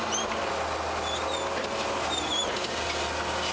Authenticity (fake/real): real